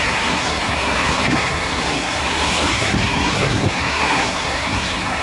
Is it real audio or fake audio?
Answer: fake